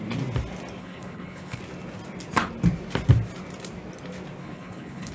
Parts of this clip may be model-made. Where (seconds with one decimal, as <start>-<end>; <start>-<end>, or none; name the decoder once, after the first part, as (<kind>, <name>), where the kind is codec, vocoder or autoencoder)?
0.8-1.6 (codec, HILCodec); 4.4-5.1